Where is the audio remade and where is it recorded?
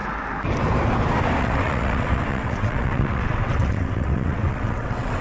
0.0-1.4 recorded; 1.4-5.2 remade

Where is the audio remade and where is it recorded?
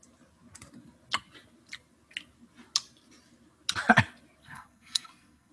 0.0-4.4 recorded; 4.4-5.5 remade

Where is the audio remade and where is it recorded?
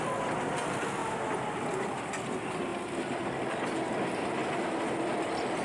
0.0-5.6 recorded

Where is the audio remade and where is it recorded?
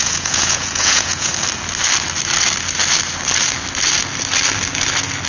0.0-1.3 remade; 1.3-5.3 recorded